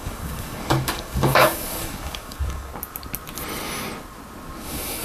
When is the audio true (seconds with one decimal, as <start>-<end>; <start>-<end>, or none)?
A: 2.7-4.6